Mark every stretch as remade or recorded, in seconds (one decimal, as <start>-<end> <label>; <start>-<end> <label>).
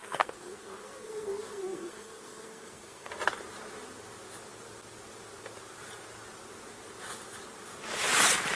0.0-3.1 remade; 3.1-8.5 recorded